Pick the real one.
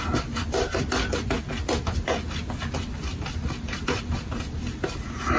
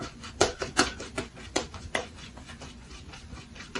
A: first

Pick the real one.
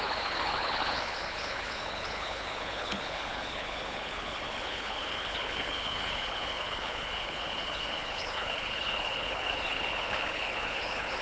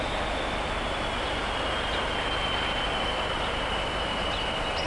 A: second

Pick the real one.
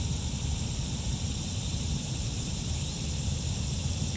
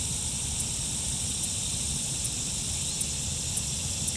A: second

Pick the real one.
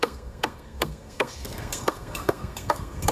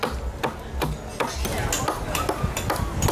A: second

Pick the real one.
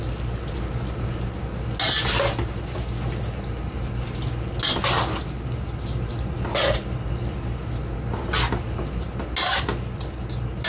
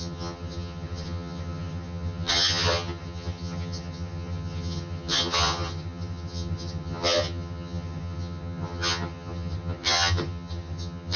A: first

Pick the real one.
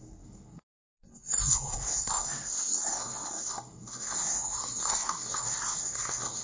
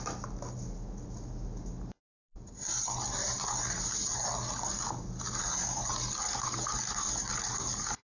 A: second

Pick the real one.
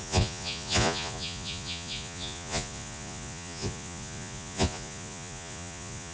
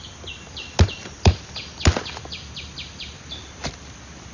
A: second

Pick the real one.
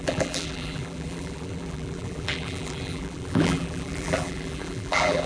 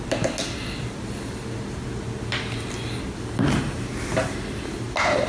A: second